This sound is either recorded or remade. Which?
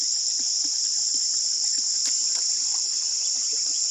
recorded